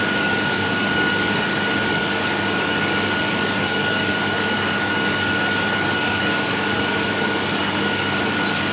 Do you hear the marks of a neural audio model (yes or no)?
yes